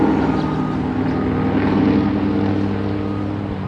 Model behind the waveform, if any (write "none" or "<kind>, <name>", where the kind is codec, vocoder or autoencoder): none